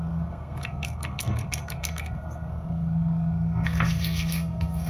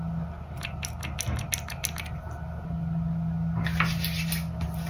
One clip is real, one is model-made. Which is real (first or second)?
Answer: second